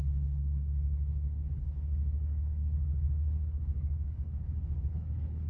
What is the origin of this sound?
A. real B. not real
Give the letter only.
B